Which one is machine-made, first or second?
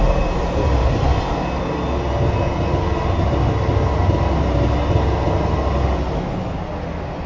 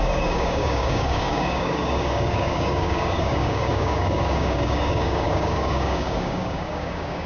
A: second